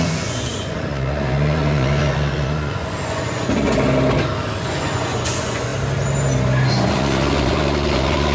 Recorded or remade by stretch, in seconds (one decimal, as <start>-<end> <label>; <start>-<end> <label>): 0.0-3.7 remade; 3.7-4.6 recorded; 4.6-5.7 remade; 5.7-6.7 recorded; 6.7-8.3 remade